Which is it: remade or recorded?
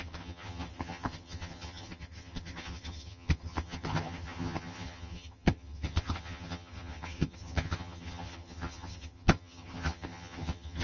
remade